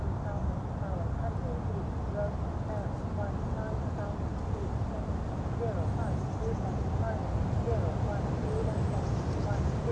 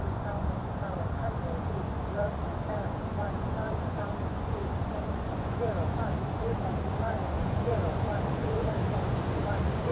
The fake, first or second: second